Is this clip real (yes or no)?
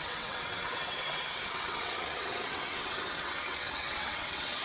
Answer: no